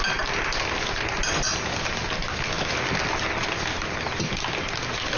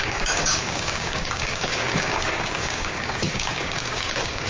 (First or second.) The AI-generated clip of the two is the second